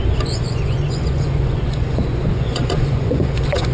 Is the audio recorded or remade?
remade